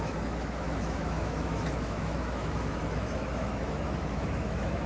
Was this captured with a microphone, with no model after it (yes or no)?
no